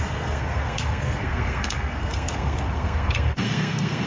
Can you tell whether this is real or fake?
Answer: fake